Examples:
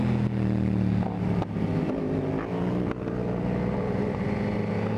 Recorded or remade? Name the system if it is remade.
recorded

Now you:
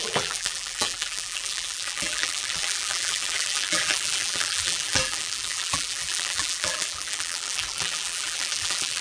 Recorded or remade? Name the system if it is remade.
remade, vocoder, BigVGAN v2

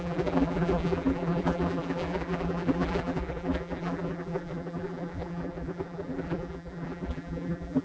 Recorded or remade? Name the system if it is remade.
remade, vocoder, BigVGAN v2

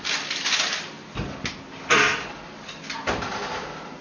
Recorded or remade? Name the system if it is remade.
recorded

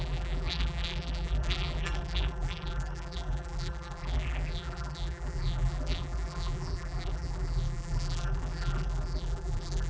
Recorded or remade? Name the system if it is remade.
remade, vocoder, BigVGAN v2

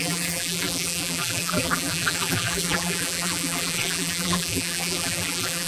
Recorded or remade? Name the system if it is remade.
remade, vocoder, BigVGAN v2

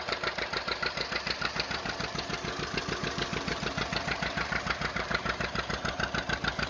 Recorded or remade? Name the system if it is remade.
remade, vocoder, BigVGAN v2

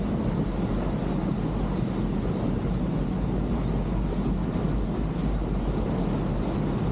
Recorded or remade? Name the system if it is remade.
recorded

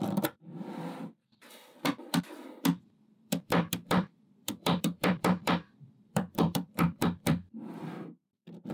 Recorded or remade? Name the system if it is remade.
remade, vocoder, BigVGAN v2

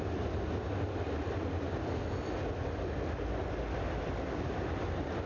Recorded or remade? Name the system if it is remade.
recorded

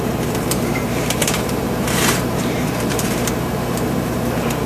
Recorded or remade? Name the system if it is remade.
remade, vocoder, BigVGAN v2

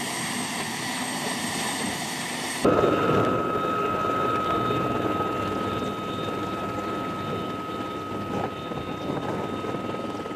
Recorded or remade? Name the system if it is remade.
recorded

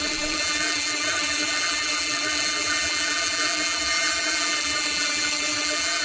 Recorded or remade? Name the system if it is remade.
remade, vocoder, BigVGAN v2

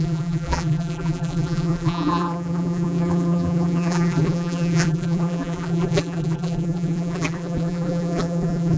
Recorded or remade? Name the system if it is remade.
remade, vocoder, BigVGAN v2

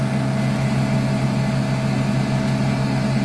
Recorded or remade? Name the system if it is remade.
recorded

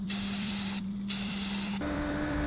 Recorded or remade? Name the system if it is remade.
remade, vocoder, BigVGAN v2